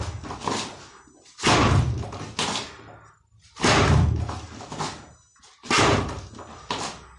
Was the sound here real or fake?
real